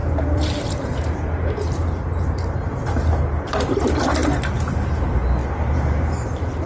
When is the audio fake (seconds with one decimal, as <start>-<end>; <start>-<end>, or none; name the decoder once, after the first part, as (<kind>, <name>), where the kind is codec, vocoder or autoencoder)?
0.0-0.5 (vocoder, BigVGAN v2); 5.4-6.3